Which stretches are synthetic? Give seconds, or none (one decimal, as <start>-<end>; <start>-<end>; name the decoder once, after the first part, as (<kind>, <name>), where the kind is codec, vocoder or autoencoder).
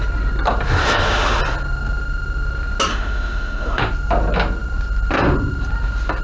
0.8-1.4 (autoencoder, DAC-VAE); 2.9-3.8